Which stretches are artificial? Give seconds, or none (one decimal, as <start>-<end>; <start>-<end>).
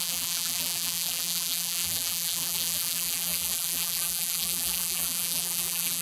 0.0-6.0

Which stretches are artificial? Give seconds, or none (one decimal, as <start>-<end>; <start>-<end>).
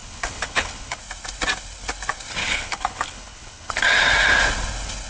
0.0-1.0; 2.4-3.7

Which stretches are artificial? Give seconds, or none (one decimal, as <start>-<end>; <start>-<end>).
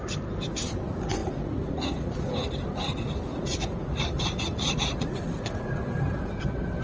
1.2-2.5; 3.3-5.9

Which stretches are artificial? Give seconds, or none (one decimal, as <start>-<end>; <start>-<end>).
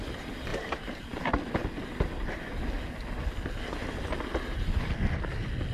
0.5-1.2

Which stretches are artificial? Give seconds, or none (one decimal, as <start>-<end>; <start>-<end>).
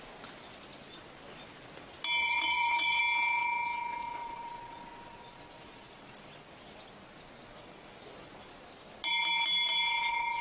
2.2-3.0; 4.2-5.5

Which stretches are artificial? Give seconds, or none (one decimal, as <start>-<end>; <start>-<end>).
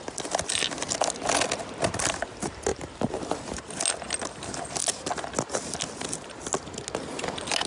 2.7-3.6